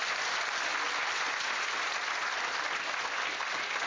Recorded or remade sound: recorded